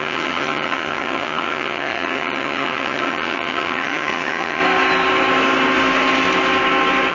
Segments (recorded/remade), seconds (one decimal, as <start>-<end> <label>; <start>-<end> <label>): 0.0-4.6 remade; 4.6-7.1 recorded